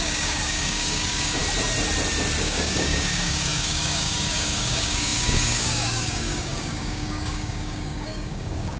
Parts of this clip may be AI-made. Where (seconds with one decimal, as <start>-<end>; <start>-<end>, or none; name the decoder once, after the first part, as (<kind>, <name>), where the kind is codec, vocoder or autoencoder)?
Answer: 0.0-1.4 (codec, DAC); 2.4-8.8